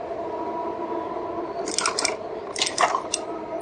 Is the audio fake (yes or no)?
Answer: no